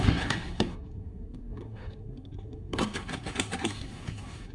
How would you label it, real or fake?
fake